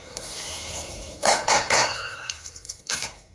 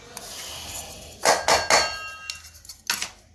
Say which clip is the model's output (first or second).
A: first